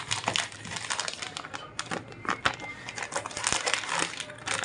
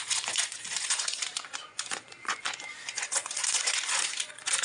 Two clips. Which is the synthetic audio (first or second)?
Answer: second